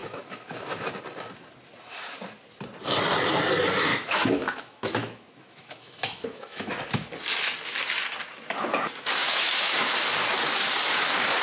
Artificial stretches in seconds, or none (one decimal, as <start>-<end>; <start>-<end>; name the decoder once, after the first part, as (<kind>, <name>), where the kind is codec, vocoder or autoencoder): 0.0-0.8 (autoencoder, DAC-VAE); 3.9-6.7; 9.2-9.9